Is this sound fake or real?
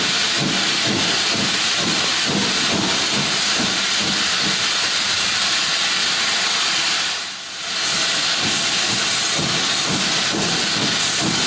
real